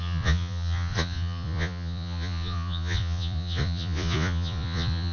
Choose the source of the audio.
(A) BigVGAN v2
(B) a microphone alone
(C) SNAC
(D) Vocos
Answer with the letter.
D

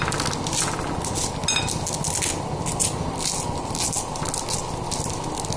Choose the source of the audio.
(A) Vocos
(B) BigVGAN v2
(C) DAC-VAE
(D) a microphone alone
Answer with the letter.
D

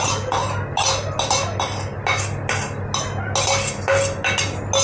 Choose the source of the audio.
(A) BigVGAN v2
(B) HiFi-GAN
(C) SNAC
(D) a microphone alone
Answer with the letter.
D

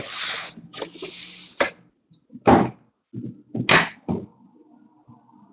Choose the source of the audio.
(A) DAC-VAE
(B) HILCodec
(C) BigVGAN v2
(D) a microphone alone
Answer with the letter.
D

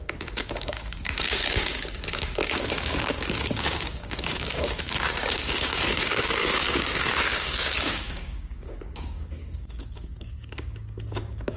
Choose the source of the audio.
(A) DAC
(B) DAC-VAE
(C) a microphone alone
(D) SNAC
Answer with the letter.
A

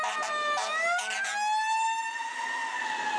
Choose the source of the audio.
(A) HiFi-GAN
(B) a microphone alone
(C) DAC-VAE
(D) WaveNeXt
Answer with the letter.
B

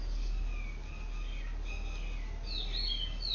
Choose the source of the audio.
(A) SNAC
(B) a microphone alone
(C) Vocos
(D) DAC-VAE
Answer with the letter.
B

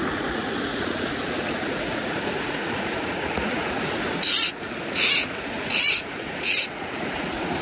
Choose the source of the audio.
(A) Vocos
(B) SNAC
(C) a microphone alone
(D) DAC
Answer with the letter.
A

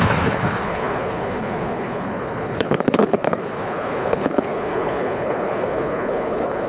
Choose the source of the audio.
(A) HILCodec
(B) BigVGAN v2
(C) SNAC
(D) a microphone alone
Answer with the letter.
A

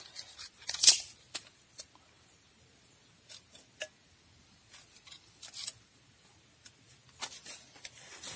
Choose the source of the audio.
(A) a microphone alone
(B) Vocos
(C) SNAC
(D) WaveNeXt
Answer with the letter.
A